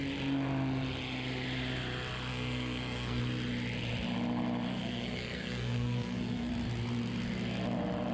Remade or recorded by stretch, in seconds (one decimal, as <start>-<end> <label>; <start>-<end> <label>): 0.0-2.3 recorded; 2.3-3.2 remade; 3.2-4.7 recorded; 4.7-6.5 remade; 6.5-8.1 recorded